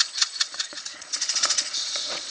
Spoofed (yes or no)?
yes